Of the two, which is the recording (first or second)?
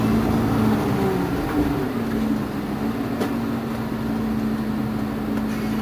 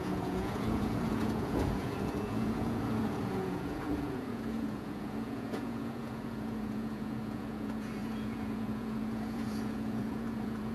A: first